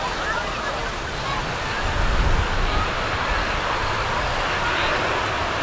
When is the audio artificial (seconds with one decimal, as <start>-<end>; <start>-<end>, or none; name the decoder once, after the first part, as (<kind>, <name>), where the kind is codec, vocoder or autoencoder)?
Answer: none